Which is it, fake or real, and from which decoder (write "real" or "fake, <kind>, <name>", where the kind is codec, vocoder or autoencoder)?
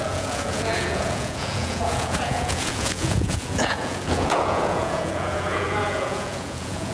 fake, vocoder, Vocos